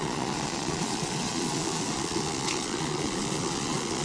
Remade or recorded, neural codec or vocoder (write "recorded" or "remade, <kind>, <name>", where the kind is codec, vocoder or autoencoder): remade, vocoder, Vocos